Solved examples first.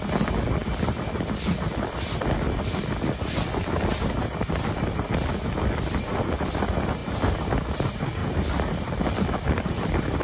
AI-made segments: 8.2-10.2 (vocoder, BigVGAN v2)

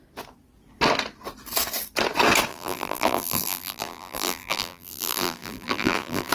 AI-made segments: 2.5-6.3 (vocoder, BigVGAN v2)

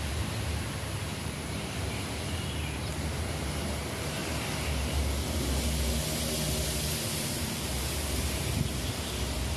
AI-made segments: 0.0-4.2 (vocoder, BigVGAN v2); 7.1-9.6

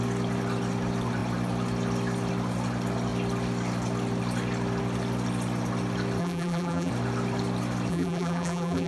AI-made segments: 6.2-6.9 (vocoder, BigVGAN v2); 7.9-8.9

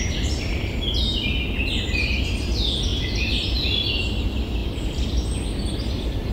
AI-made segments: none